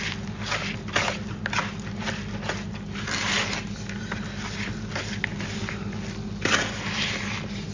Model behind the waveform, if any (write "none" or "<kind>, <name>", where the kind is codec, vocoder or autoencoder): none